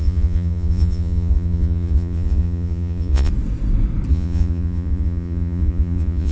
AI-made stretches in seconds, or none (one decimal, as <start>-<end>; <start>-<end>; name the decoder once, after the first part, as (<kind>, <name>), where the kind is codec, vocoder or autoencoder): 0.0-3.3 (vocoder, Vocos); 4.1-6.3